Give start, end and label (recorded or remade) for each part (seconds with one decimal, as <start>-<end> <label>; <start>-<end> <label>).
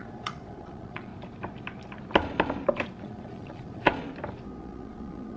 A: 0.0-1.1 remade; 1.1-3.0 recorded; 3.0-3.9 remade; 3.9-4.6 recorded; 4.6-5.4 remade